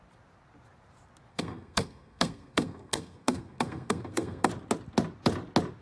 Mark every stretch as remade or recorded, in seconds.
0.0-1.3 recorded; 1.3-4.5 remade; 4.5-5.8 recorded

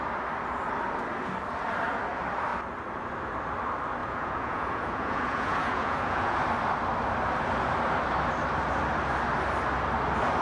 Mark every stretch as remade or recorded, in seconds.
0.0-4.0 recorded; 4.0-6.4 remade; 6.4-10.4 recorded

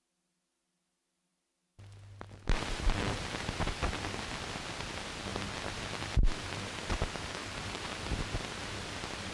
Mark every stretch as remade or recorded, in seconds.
0.0-7.4 recorded; 7.4-8.1 remade; 8.1-9.3 recorded

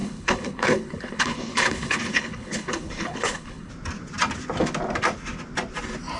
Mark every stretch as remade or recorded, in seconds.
0.0-3.7 remade; 3.7-6.2 recorded

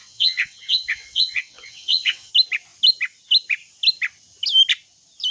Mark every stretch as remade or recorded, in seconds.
0.0-2.3 remade; 2.3-5.3 recorded

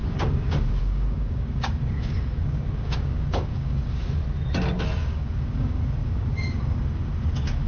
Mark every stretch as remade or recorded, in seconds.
0.0-4.2 remade; 4.2-5.0 recorded; 5.0-7.7 remade